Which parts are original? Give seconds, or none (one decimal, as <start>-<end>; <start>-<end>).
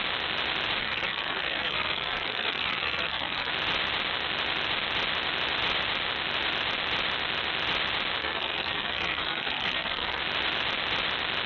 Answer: 0.0-0.8; 3.5-8.2; 10.2-11.5